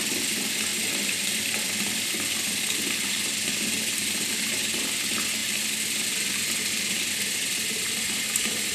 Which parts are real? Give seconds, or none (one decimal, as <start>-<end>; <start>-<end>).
0.0-0.7; 4.3-5.4; 6.8-8.7